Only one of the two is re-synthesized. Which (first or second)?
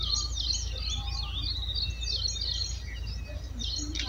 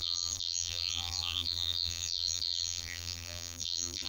second